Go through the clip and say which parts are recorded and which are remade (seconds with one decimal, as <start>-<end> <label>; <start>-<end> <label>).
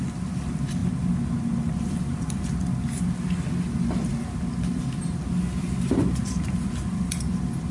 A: 0.0-7.7 recorded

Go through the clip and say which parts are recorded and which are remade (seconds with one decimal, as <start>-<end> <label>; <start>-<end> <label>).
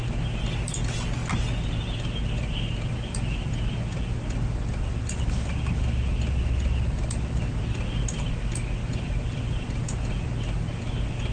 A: 0.0-11.3 recorded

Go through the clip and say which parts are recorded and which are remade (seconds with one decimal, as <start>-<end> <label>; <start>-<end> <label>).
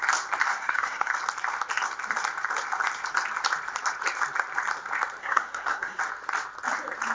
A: 0.0-0.5 recorded; 0.5-1.1 remade; 1.1-5.2 recorded; 5.2-6.0 remade; 6.0-7.1 recorded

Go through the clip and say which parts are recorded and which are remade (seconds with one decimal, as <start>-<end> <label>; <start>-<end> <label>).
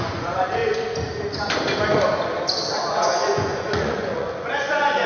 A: 0.0-0.6 remade; 0.6-2.9 recorded; 2.9-5.1 remade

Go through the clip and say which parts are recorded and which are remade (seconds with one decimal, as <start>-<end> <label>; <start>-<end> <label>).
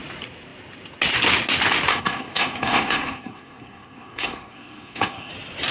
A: 0.0-1.9 recorded; 1.9-5.3 remade; 5.3-5.7 recorded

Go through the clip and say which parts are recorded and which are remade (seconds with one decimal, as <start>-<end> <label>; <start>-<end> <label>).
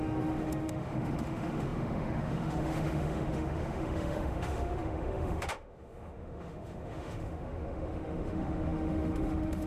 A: 0.0-9.7 remade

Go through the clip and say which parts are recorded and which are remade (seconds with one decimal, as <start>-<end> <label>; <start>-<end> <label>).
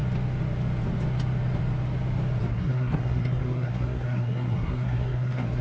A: 0.0-2.5 recorded; 2.5-5.6 remade